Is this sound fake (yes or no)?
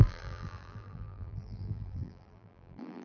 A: yes